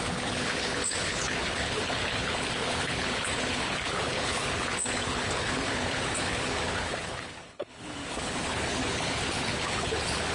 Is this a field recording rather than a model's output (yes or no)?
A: no